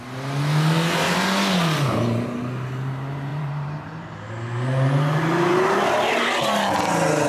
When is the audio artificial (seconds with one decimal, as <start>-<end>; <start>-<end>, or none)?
3.3-4.3